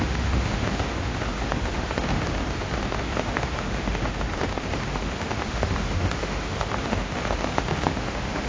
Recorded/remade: remade